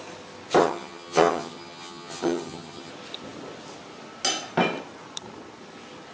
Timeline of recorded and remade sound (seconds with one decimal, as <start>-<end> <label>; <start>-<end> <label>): 0.0-0.6 recorded; 0.6-2.9 remade; 2.9-6.1 recorded